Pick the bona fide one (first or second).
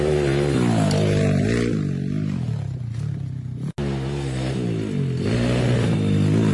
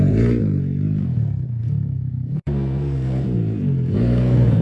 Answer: first